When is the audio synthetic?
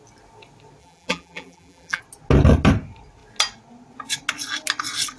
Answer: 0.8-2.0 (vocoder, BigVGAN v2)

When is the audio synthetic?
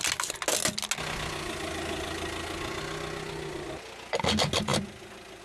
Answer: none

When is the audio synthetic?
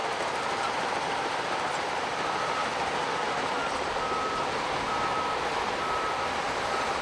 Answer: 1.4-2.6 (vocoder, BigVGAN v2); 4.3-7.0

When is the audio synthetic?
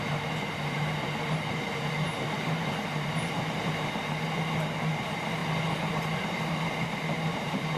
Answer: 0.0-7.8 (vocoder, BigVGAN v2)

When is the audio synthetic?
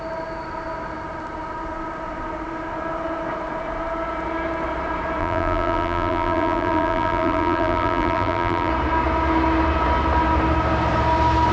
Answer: 5.2-8.7 (vocoder, BigVGAN v2)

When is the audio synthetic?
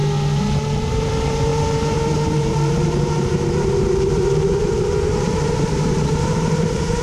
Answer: 0.9-7.0 (vocoder, BigVGAN v2)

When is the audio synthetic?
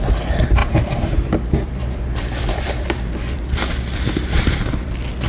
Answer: none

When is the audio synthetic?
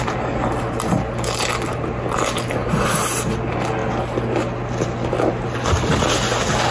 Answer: none